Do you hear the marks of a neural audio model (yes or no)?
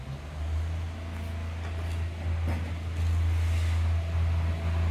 no